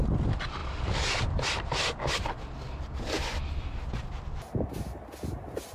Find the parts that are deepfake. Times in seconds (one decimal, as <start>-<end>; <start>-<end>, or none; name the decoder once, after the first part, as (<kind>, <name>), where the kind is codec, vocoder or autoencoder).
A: none